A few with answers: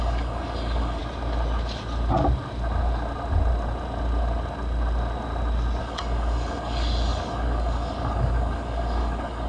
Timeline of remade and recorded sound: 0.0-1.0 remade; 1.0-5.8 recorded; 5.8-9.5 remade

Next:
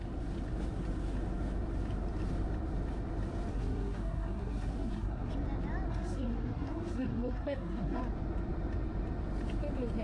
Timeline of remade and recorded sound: 0.0-3.5 recorded; 3.5-5.3 remade; 5.3-5.9 recorded; 5.9-8.0 remade; 8.0-10.0 recorded

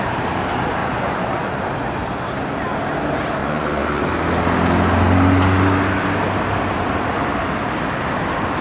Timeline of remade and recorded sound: 0.0-0.8 recorded; 0.8-1.6 remade; 1.6-3.4 recorded; 3.4-4.0 remade; 4.0-8.6 recorded

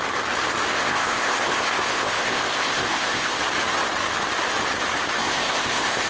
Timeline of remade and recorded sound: 0.0-0.7 recorded; 0.7-3.4 remade; 3.4-5.2 recorded; 5.2-6.1 remade